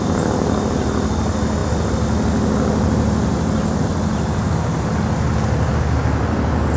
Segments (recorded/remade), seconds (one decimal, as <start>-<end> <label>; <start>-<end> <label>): 0.0-6.8 recorded